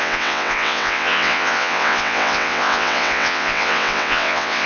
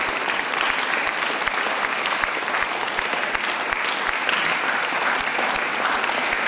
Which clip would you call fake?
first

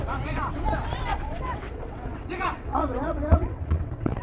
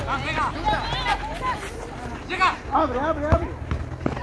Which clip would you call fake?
first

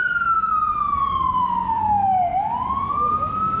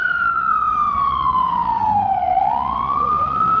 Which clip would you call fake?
second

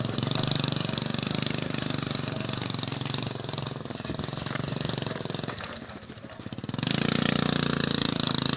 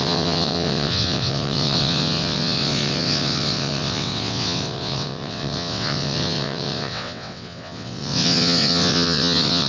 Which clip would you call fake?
second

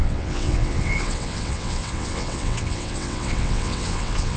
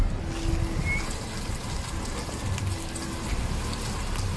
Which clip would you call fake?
first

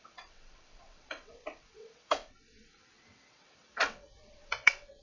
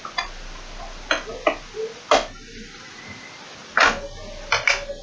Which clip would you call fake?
first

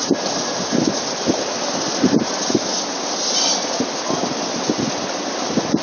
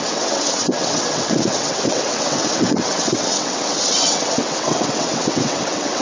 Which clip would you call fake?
second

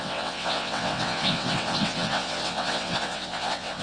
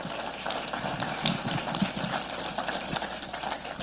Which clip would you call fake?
first